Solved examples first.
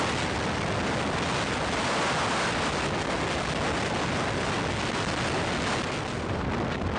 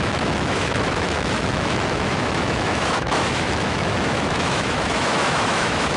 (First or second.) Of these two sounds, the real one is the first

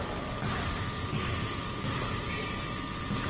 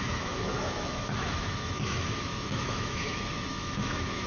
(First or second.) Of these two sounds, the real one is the first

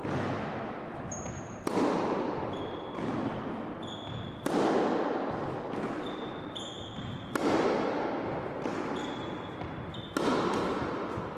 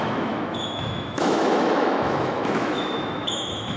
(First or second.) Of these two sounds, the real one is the first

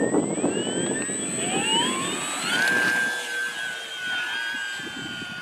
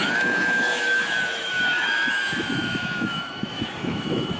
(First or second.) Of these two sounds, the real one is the first